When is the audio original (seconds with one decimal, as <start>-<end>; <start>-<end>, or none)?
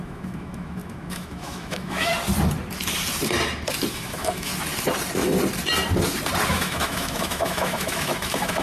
2.1-3.9; 4.5-6.5